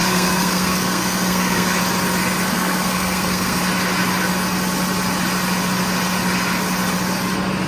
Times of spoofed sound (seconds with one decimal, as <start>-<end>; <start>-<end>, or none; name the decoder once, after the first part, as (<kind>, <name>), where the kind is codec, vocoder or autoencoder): 0.0-1.8 (codec, SNAC); 2.5-3.6